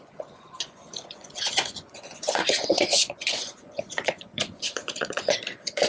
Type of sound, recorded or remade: remade